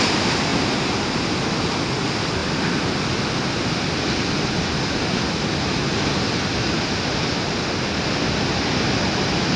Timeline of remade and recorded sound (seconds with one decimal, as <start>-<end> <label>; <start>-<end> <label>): 0.0-9.6 recorded